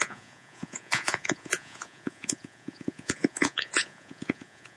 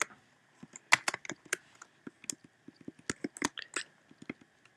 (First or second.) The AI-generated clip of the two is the first